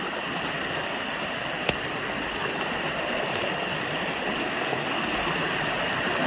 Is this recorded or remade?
remade